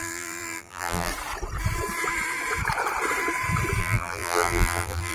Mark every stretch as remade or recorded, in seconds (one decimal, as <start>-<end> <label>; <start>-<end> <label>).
0.0-1.1 remade; 1.1-3.8 recorded; 3.8-5.1 remade